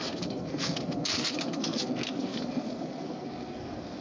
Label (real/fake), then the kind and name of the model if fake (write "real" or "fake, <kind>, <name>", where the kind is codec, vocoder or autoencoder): fake, codec, SNAC